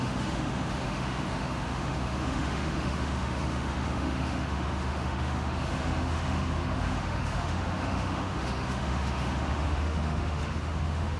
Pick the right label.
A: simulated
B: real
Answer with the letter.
A